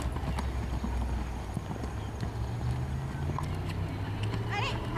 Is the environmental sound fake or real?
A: real